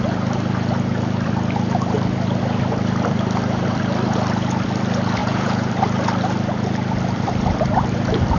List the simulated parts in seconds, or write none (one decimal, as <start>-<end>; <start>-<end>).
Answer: 5.2-5.7